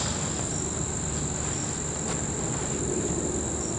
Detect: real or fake real